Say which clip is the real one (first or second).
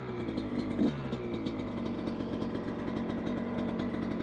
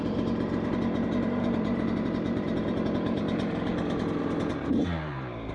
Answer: first